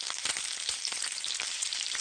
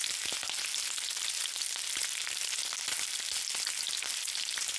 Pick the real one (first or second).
second